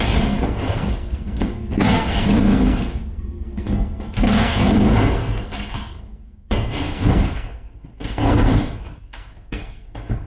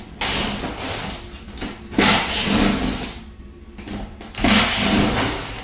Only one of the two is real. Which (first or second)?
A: second